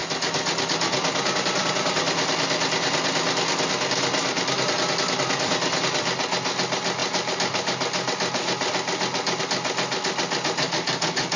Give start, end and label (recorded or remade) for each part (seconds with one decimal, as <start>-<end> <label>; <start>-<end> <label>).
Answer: 0.0-11.4 recorded